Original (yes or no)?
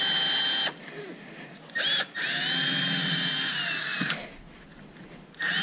yes